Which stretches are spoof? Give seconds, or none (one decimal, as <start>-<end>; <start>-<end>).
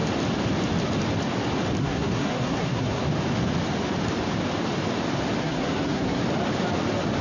1.8-3.0; 5.4-6.2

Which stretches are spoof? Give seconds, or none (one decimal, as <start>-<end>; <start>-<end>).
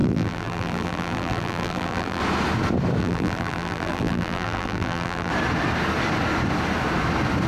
0.0-2.2; 3.0-5.3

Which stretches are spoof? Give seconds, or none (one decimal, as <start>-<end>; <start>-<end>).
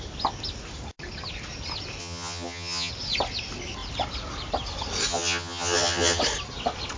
2.0-2.9; 5.1-6.2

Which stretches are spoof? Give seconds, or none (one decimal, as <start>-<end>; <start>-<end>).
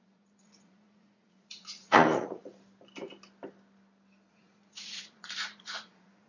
0.0-2.4; 4.3-6.3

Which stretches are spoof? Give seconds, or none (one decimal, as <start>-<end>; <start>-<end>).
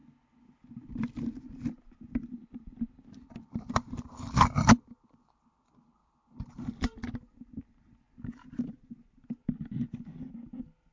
none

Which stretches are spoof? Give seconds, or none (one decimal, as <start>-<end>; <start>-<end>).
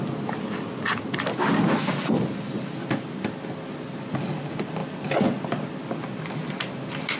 none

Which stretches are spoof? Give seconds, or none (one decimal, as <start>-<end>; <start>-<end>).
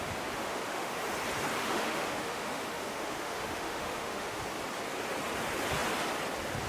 0.4-1.0; 1.5-4.4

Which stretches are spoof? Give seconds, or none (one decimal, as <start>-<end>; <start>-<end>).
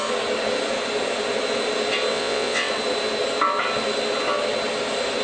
2.1-2.7